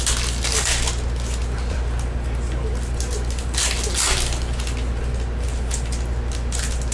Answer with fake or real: real